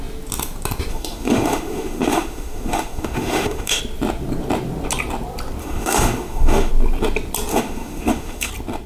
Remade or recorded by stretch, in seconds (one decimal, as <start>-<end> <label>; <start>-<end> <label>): 0.0-0.9 recorded; 0.9-3.8 remade; 3.8-5.6 recorded; 5.6-6.7 remade; 6.7-7.5 recorded; 7.5-8.5 remade; 8.5-8.9 recorded

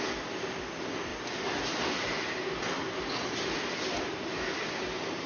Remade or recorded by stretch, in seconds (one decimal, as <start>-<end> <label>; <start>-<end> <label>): 0.0-5.3 recorded

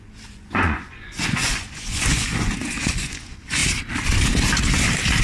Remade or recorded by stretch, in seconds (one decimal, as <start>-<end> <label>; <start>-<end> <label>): 0.0-3.6 remade; 3.6-5.2 recorded

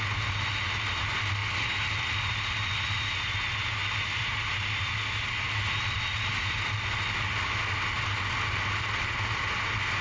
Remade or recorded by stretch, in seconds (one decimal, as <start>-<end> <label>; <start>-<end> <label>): 0.0-10.0 recorded

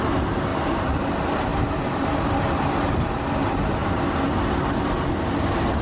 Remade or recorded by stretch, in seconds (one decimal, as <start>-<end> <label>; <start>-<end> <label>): 0.0-0.5 recorded; 0.5-1.0 remade; 1.0-1.5 recorded; 1.5-2.1 remade; 2.1-5.8 recorded

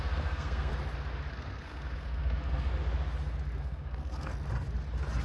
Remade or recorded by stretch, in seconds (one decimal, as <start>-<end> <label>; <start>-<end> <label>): 0.0-0.7 remade; 0.7-1.3 recorded; 1.3-2.7 remade; 2.7-3.6 recorded; 3.6-4.3 remade; 4.3-5.2 recorded